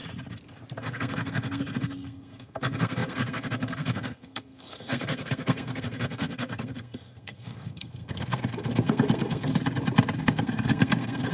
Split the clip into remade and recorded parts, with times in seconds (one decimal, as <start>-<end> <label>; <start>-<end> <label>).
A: 0.0-0.8 recorded; 0.8-9.5 remade; 9.5-10.2 recorded; 10.2-11.3 remade